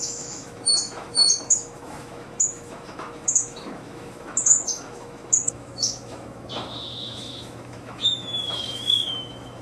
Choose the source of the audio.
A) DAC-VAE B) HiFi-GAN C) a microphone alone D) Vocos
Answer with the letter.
A